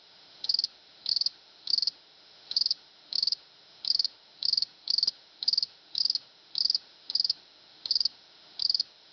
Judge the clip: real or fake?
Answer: fake